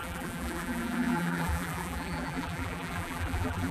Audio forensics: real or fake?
fake